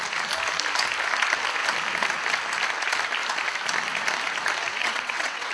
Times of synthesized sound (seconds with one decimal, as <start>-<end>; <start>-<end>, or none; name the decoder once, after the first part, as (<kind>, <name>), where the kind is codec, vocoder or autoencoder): 4.8-5.5 (vocoder, WaveNeXt)